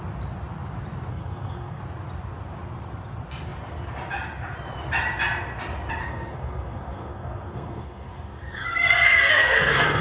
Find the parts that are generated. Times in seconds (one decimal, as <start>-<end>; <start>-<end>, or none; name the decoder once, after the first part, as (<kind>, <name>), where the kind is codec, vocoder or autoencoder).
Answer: 1.1-1.8 (codec, SNAC); 6.0-10.0